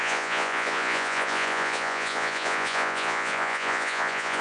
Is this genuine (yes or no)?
no